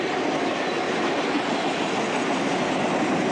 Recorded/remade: recorded